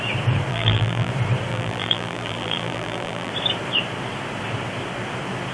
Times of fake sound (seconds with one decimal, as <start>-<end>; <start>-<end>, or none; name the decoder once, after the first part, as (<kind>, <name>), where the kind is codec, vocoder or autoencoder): 0.5-1.1 (vocoder, BigVGAN v2); 1.5-3.3